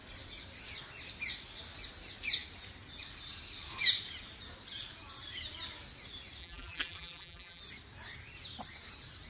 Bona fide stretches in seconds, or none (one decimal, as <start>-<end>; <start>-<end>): 0.0-6.4; 7.6-9.3